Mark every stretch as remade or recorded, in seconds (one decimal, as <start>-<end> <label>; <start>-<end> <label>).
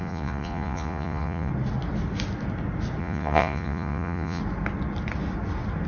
0.0-1.5 remade; 1.5-3.0 recorded; 3.0-4.4 remade; 4.4-5.9 recorded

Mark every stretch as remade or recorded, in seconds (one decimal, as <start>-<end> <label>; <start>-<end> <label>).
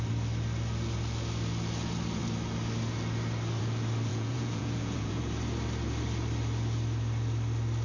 0.0-4.1 recorded; 4.1-5.2 remade; 5.2-7.8 recorded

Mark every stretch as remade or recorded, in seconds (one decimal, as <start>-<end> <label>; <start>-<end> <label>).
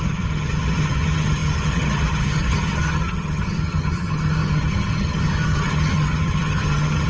0.0-7.1 remade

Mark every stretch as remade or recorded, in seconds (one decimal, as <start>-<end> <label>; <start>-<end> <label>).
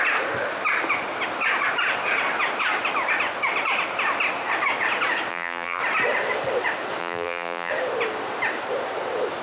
0.0-5.3 recorded; 5.3-5.8 remade; 5.8-7.0 recorded; 7.0-7.7 remade; 7.7-9.4 recorded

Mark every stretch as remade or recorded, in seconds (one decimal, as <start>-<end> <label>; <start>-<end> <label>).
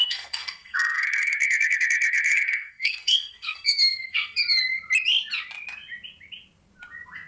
0.0-4.4 remade; 4.4-7.3 recorded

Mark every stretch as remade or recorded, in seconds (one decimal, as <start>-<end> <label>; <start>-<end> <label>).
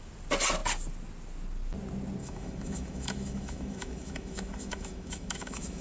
0.0-2.2 recorded; 2.2-5.8 remade